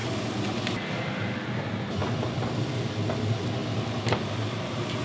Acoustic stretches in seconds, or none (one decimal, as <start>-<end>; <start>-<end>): 0.0-5.0